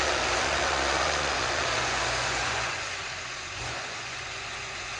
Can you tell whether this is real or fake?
fake